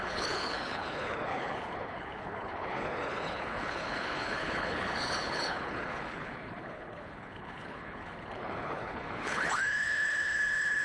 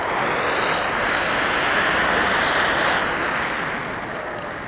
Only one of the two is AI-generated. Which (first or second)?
first